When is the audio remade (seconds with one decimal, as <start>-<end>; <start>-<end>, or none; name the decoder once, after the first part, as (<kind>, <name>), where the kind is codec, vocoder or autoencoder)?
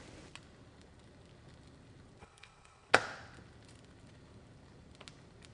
2.2-2.9 (codec, HILCodec)